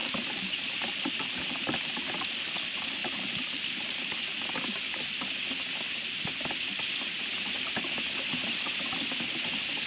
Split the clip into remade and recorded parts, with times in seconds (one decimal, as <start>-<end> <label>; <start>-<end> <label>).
0.0-1.9 remade; 1.9-3.0 recorded; 3.0-4.2 remade; 4.2-9.9 recorded